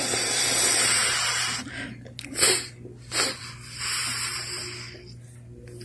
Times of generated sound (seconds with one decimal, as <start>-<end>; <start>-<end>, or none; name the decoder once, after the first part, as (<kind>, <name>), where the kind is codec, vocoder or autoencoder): none